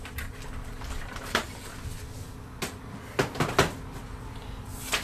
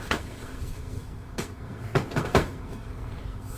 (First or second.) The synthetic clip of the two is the second